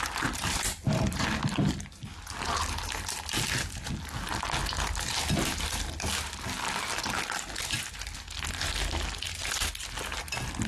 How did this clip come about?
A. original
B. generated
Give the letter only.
A